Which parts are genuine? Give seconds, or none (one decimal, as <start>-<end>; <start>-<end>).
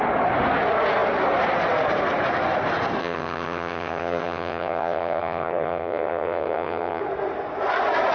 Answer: 0.0-3.0; 7.0-8.1